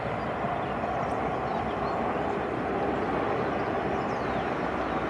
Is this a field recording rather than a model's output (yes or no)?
yes